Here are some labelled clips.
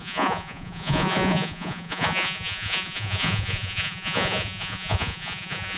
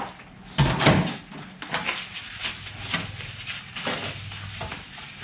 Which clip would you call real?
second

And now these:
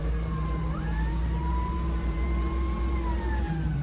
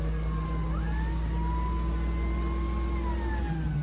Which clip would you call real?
second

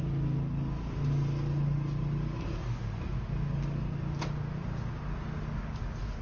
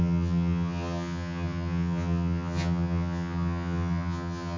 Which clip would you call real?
first